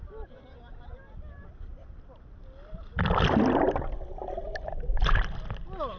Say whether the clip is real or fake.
real